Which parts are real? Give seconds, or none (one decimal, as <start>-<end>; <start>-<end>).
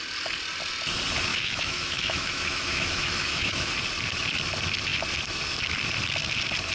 0.0-1.3; 3.7-6.7